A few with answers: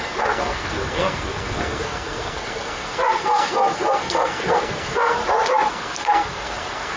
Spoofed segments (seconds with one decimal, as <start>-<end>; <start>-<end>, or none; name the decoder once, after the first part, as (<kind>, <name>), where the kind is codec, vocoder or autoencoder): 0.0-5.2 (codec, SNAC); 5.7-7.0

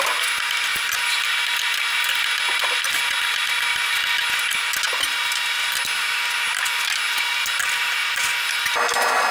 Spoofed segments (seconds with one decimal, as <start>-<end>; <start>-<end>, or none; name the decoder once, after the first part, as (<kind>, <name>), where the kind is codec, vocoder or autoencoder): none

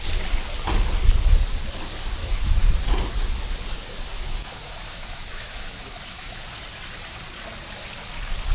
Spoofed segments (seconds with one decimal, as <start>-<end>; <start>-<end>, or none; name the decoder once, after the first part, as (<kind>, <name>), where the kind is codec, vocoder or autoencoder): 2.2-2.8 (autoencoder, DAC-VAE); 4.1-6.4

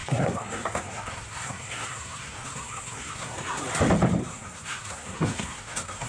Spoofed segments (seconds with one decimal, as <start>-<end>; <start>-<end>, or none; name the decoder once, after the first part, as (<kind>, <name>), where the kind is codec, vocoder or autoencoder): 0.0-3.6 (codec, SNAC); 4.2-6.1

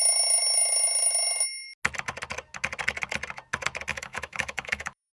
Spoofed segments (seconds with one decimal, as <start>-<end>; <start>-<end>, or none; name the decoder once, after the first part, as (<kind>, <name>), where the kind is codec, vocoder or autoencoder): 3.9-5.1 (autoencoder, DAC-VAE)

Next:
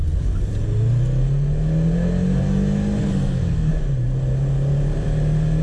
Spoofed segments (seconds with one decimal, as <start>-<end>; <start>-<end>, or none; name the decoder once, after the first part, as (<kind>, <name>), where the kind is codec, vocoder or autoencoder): 3.0-3.7 (codec, SNAC)

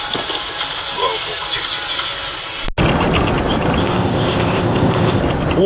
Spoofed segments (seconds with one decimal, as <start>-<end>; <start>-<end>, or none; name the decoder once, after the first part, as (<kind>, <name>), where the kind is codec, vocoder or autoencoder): 3.8-5.2 (codec, ZipCodec)